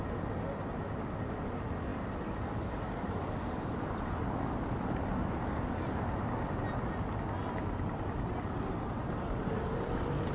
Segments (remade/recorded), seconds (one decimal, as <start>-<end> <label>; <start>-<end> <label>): 0.0-10.3 recorded